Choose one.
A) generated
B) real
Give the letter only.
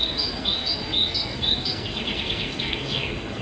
A